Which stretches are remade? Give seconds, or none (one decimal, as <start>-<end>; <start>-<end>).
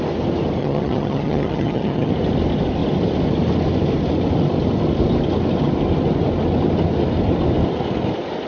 0.6-2.1